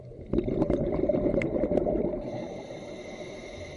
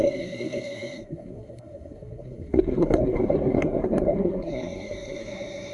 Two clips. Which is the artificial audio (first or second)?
second